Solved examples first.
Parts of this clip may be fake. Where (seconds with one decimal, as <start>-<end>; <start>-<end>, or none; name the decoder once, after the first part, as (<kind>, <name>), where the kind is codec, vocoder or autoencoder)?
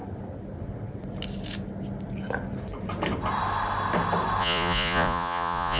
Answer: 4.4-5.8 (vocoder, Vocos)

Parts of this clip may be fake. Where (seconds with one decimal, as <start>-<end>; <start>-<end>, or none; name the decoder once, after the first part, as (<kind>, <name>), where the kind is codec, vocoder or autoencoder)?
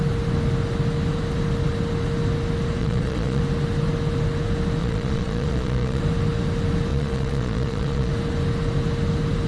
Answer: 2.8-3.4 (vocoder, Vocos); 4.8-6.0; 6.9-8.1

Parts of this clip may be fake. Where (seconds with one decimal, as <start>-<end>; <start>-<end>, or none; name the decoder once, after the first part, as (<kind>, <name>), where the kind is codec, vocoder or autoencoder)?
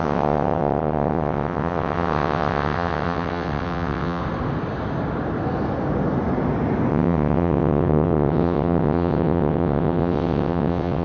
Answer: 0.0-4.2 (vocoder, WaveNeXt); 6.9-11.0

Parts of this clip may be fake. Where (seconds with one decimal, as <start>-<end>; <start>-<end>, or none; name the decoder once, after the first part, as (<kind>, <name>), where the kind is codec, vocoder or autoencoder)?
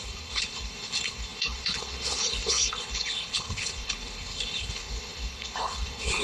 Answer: 0.0-6.2 (codec, HILCodec)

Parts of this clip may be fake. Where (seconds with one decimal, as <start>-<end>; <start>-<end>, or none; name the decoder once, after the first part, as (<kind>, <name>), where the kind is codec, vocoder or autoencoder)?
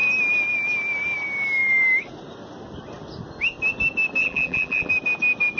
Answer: 4.2-4.9 (vocoder, BigVGAN v2)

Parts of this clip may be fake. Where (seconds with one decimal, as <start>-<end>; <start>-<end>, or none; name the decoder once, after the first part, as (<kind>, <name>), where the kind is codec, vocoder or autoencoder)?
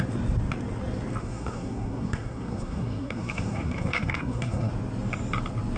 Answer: 1.2-4.7 (codec, SNAC)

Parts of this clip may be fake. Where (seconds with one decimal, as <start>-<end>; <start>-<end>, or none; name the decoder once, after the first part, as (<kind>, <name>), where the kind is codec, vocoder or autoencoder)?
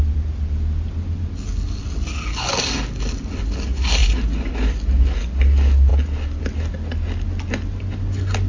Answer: 4.0-4.5 (vocoder, BigVGAN v2)